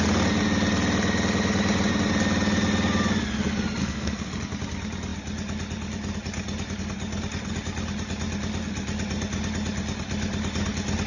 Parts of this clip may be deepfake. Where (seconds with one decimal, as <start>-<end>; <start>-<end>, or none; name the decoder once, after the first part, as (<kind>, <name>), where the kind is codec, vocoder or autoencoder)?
3.8-4.3 (codec, SNAC)